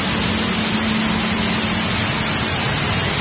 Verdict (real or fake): real